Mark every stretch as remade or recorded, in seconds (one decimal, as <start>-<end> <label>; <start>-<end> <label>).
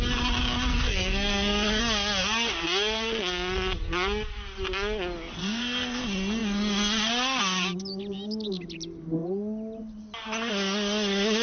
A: 0.0-0.7 recorded; 0.7-1.8 remade; 1.8-5.4 recorded; 5.4-6.0 remade; 6.0-11.4 recorded